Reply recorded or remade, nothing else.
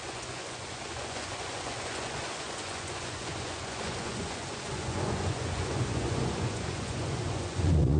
remade